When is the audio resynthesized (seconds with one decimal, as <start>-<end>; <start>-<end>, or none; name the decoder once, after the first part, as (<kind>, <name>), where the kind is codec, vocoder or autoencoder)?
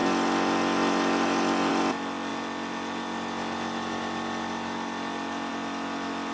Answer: none